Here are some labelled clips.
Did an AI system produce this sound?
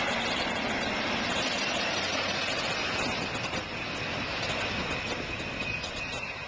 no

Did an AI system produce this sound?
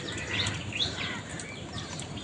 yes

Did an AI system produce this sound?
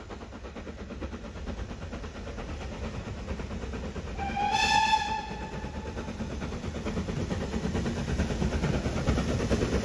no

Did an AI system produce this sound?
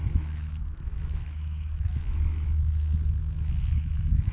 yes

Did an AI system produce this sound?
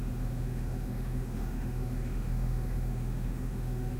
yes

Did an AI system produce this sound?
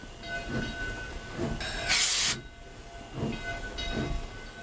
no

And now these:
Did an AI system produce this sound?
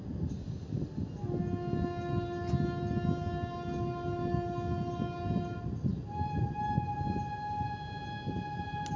no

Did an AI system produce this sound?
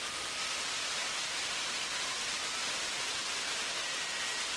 no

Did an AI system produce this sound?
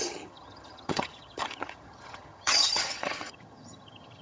yes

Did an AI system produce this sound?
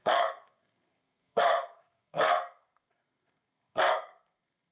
yes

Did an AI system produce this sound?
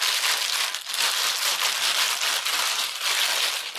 no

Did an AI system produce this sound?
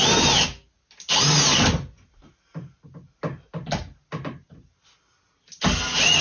no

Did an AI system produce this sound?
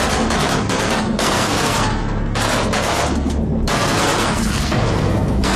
yes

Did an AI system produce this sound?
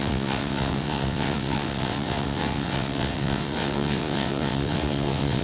yes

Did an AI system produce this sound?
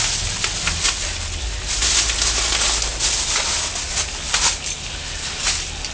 no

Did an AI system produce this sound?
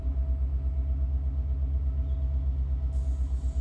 no